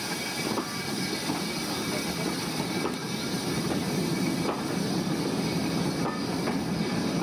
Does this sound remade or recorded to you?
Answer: recorded